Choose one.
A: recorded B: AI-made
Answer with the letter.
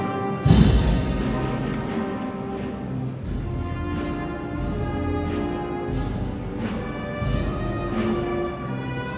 A